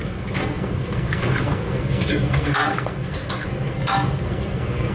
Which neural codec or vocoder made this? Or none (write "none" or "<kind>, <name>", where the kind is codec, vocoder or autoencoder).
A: codec, SNAC